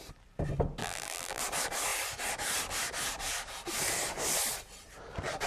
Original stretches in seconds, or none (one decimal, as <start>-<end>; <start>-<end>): 0.0-0.8; 1.4-5.5